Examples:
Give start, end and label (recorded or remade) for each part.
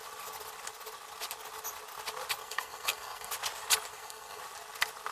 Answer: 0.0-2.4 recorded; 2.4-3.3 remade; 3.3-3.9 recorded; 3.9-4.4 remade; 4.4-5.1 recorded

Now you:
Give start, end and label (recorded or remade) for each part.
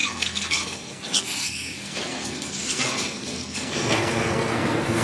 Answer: 0.0-5.0 remade